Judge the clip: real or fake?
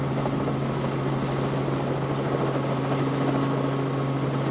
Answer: real